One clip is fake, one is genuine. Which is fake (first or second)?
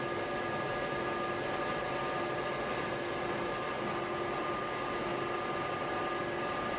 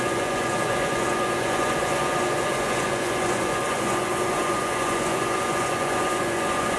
second